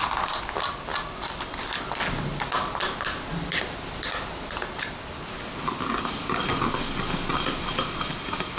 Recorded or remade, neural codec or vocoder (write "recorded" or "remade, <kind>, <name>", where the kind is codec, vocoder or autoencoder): recorded